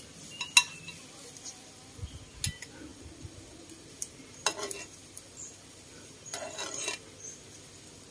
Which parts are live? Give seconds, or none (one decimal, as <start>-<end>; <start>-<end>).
0.0-2.9; 4.2-5.0; 7.0-8.1